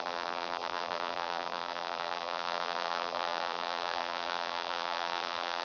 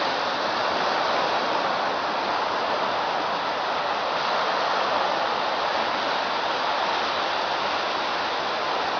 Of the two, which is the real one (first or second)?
second